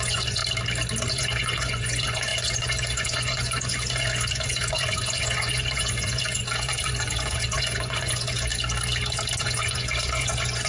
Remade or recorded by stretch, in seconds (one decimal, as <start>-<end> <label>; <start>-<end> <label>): 0.0-0.4 remade; 0.4-1.1 recorded; 1.1-8.5 remade; 8.5-9.4 recorded; 9.4-10.7 remade